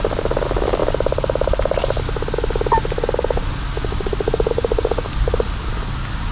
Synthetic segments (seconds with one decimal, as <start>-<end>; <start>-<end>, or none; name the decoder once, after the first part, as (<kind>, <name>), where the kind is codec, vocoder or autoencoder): none